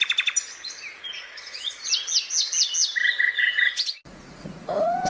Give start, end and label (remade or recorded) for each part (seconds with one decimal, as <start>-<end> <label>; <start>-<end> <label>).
0.0-1.0 recorded; 1.0-1.8 remade; 1.8-3.0 recorded; 3.0-5.1 remade

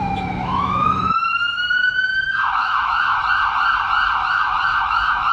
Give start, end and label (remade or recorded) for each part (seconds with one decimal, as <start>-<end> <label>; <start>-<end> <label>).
0.0-3.2 remade; 3.2-4.3 recorded; 4.3-5.3 remade